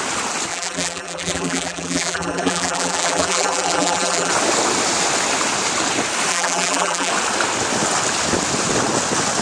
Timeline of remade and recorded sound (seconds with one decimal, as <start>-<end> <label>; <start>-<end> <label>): 0.0-0.5 recorded; 0.5-4.3 remade; 4.3-6.3 recorded; 6.3-7.1 remade; 7.1-9.4 recorded